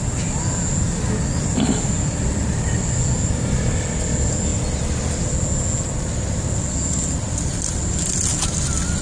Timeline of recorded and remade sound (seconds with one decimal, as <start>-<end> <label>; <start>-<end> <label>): 0.0-9.0 recorded